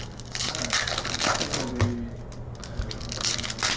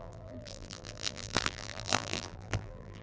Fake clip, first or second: second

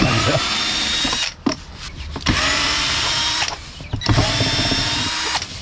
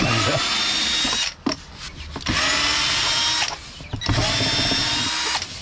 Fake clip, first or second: first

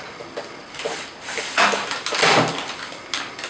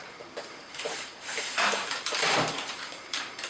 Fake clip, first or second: second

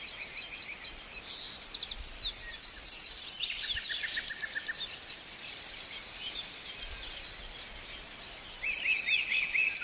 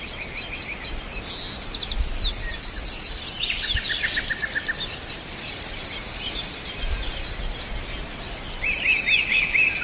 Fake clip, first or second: first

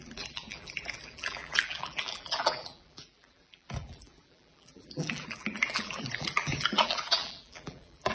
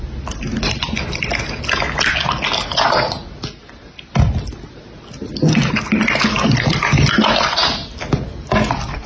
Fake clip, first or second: first